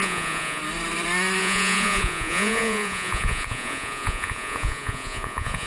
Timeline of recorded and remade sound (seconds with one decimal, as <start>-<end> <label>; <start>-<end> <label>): 0.0-0.6 remade; 0.6-1.4 recorded; 1.4-5.7 remade